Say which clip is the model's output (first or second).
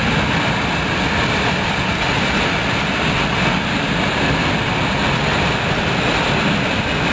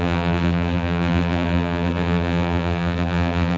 second